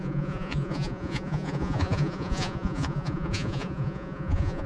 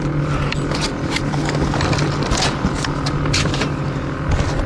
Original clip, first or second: second